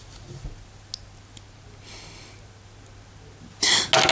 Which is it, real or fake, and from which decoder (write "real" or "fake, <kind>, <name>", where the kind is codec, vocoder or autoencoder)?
real